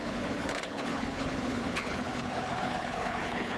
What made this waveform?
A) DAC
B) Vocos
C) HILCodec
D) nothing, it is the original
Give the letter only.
C